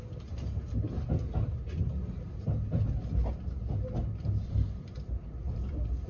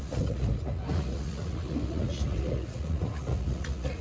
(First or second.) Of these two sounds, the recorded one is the first